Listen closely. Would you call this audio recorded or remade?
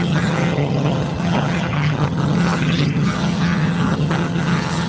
remade